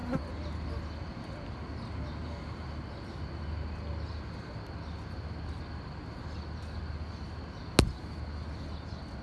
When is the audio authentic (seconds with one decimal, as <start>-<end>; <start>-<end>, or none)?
0.0-9.2